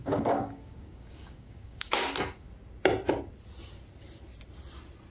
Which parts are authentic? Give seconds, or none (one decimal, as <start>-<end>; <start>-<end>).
2.0-5.1